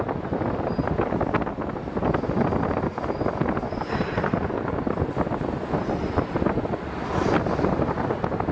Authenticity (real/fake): real